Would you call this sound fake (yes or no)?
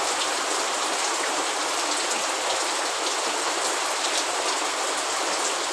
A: no